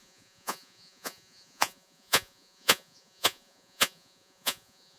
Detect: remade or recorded remade